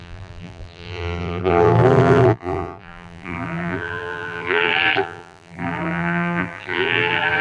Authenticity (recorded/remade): remade